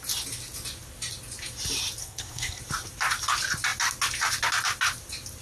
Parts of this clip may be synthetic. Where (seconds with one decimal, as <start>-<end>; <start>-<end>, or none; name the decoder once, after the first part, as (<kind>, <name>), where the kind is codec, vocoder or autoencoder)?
2.0-2.6 (codec, SNAC)